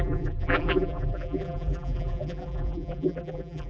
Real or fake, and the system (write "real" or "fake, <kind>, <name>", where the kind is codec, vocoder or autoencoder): fake, vocoder, BigVGAN v2